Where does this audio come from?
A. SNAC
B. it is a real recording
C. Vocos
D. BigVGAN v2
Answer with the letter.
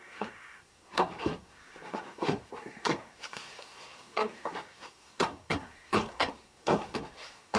A